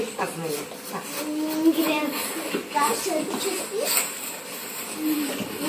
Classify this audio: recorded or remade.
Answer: recorded